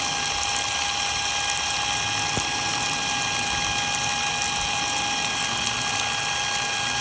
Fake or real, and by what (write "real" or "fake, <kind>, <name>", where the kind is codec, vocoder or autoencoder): real